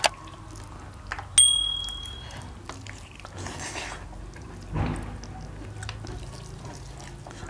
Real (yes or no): yes